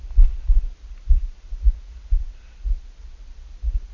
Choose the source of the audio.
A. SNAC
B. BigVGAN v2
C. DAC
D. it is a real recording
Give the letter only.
D